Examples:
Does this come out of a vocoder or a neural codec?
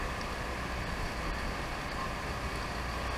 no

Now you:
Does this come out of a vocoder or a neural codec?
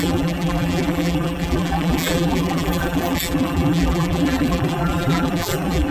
yes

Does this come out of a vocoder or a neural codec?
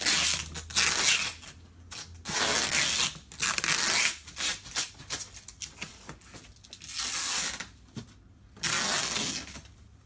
no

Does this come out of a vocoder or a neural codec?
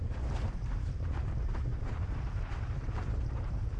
yes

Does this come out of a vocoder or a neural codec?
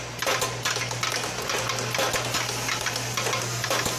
no